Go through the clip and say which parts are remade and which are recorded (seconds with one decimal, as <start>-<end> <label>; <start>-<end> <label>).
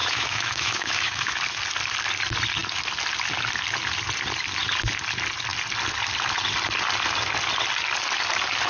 0.0-1.3 remade; 1.3-8.7 recorded